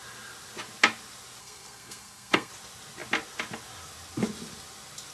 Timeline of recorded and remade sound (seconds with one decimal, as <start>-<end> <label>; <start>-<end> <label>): 0.0-1.4 recorded; 1.4-2.5 remade; 2.5-5.1 recorded